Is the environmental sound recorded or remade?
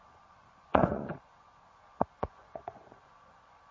remade